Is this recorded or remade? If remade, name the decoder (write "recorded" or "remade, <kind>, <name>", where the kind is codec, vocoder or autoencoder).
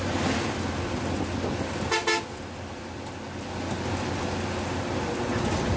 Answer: recorded